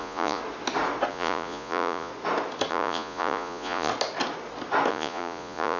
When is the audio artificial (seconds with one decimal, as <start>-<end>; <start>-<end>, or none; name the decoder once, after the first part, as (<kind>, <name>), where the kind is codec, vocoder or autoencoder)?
0.0-0.4 (vocoder, Vocos); 1.1-2.1; 2.7-3.9; 4.9-5.8